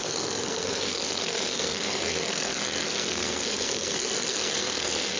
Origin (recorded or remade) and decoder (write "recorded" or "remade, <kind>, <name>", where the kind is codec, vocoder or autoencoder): remade, codec, SNAC